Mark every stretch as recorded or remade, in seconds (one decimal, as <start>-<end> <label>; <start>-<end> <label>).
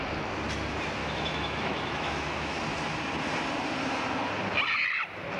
0.0-1.0 recorded; 1.0-2.6 remade; 2.6-5.4 recorded